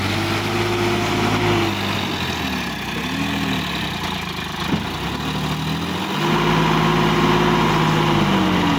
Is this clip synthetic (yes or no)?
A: no